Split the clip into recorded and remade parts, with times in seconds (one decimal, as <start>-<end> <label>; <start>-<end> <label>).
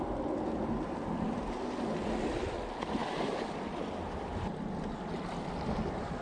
0.0-6.2 recorded